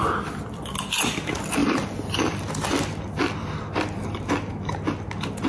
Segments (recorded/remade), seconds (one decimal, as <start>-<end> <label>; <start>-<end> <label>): 0.0-5.5 recorded